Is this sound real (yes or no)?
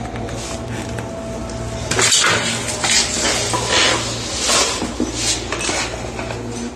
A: yes